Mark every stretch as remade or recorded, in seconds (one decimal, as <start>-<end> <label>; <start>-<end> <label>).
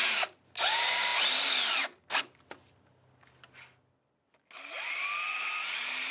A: 0.0-6.1 recorded